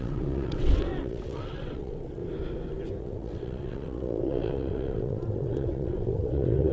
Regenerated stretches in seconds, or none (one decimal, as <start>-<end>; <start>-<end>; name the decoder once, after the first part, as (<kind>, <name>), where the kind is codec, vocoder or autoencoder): 0.0-2.2 (vocoder, WaveNeXt); 3.0-6.7